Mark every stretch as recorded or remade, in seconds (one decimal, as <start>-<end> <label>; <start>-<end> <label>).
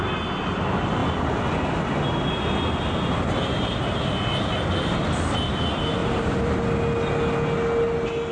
0.0-6.0 recorded; 6.0-6.5 remade; 6.5-8.3 recorded